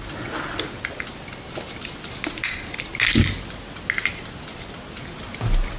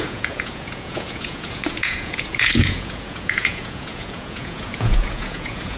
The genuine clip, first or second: first